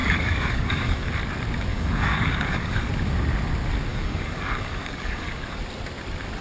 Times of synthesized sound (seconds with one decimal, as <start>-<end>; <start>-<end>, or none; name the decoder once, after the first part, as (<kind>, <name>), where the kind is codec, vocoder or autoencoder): 0.0-1.1 (codec, DAC); 1.7-2.9; 3.9-5.6